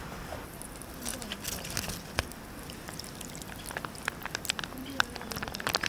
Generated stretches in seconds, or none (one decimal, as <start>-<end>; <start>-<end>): 0.0-1.1; 4.6-5.9